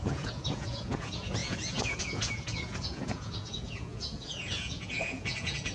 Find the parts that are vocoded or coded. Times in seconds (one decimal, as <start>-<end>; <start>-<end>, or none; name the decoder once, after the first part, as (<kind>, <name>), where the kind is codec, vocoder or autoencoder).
0.0-5.7 (vocoder, Vocos)